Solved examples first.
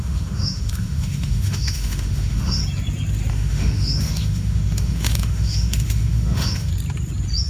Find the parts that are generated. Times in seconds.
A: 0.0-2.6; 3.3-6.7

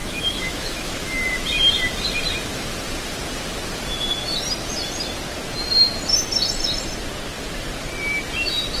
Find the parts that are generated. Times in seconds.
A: 0.0-1.3

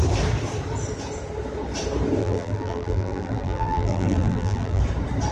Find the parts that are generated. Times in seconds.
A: 2.2-4.8